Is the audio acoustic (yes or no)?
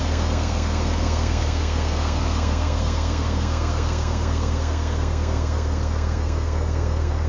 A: no